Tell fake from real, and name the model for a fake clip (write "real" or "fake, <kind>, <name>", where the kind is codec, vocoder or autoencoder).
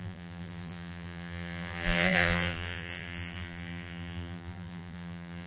fake, vocoder, BigVGAN v2